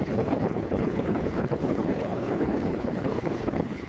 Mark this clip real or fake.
fake